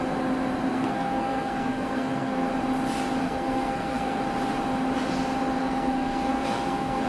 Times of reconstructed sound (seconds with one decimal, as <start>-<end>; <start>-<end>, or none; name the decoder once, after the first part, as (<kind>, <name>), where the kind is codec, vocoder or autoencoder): 0.7-2.5 (codec, SNAC); 3.2-4.2; 5.6-7.1